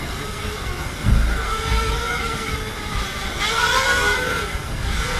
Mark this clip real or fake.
fake